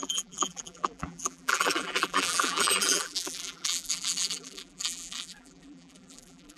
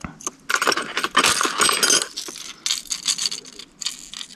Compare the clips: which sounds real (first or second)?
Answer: second